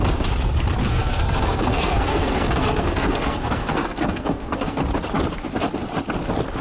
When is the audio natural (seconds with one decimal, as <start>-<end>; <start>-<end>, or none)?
0.0-0.8; 4.8-6.6